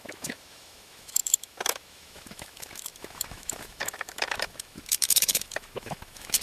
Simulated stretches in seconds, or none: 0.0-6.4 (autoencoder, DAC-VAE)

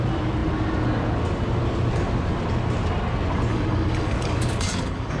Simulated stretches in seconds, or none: 3.5-5.2 (codec, DAC)

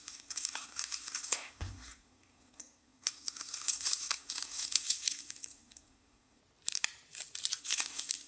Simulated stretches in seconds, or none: 0.0-6.4 (codec, SNAC); 7.6-8.3

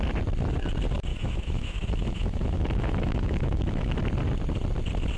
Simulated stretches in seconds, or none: 1.1-4.0 (autoencoder, DAC-VAE)

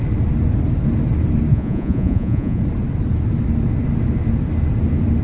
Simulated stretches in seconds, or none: 1.5-2.6 (vocoder, Vocos)

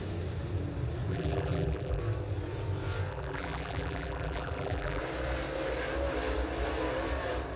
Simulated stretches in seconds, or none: 1.1-2.0 (vocoder, BigVGAN v2); 3.1-5.0

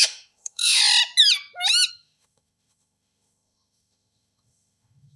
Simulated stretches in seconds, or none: 0.0-0.8 (autoencoder, DAC-VAE); 1.9-5.2

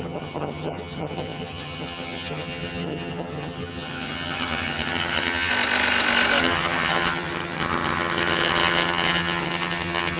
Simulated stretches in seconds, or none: 0.0-5.5 (vocoder, HiFi-GAN); 6.4-10.2